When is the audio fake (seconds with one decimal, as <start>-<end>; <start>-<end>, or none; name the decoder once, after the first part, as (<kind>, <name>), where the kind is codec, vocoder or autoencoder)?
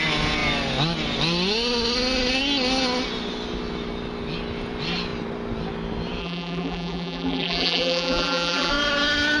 6.2-8.7 (vocoder, BigVGAN v2)